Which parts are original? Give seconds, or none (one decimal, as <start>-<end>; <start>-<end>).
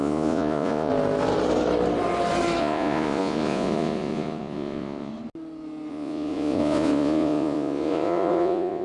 0.9-2.6; 5.1-5.9